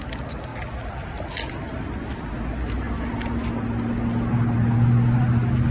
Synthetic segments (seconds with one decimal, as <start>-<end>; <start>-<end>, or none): none